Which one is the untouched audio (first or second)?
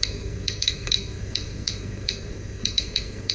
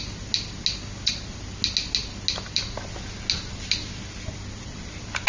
second